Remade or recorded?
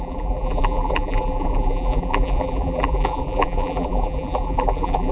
remade